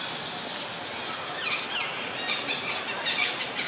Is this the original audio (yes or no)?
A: yes